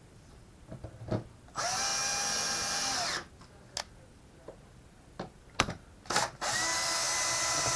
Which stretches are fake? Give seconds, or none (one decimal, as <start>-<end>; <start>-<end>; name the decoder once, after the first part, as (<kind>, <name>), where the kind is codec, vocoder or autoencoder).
none